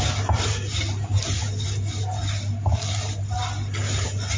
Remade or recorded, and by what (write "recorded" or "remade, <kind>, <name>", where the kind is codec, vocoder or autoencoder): recorded